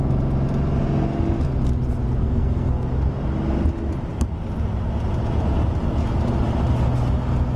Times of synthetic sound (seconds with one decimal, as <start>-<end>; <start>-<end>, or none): 2.2-2.9